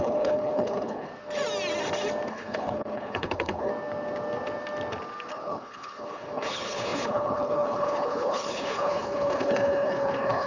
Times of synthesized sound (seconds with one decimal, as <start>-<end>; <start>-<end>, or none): 0.0-1.1; 2.3-3.7; 5.3-10.5